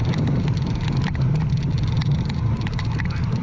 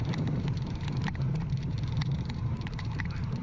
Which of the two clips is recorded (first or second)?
first